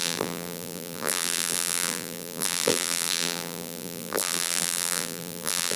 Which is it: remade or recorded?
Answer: remade